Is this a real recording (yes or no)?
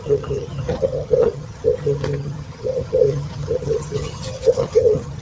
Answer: no